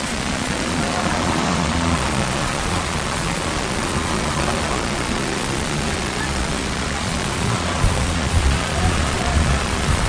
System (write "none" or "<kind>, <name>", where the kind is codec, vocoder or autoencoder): vocoder, Vocos